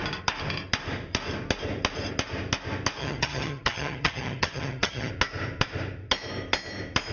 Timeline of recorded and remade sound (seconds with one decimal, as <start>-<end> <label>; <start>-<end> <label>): 0.0-3.0 recorded; 3.0-5.1 remade; 5.1-7.1 recorded